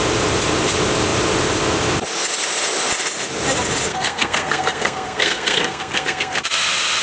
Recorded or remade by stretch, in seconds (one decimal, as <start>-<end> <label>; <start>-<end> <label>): 0.0-3.9 recorded; 3.9-6.4 remade; 6.4-7.0 recorded

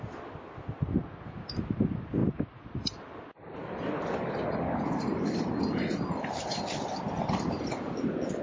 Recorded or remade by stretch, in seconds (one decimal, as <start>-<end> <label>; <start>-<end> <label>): 0.0-8.4 recorded

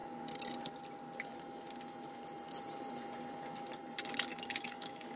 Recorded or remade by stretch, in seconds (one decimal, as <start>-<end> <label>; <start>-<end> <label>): 0.0-4.3 recorded; 4.3-5.2 remade

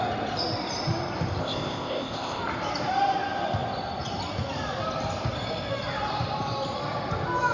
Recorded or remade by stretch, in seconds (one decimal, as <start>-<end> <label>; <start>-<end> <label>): 0.0-1.4 recorded; 1.4-2.4 remade; 2.4-7.5 recorded

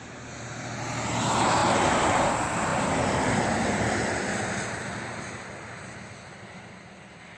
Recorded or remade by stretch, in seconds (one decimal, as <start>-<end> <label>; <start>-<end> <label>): 0.0-7.4 recorded

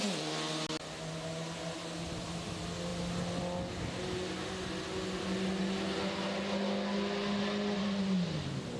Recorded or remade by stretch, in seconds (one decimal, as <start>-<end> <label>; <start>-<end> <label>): 0.0-8.8 recorded